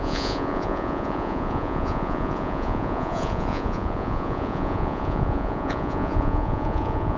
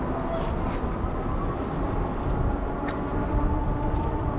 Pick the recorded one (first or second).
second